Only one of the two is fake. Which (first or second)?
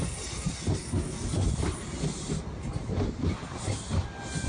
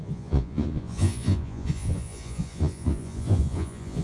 second